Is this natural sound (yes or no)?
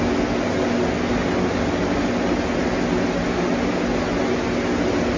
yes